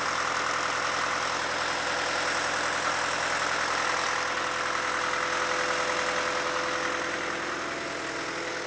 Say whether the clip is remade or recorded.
recorded